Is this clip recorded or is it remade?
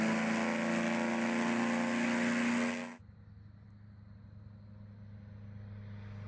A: recorded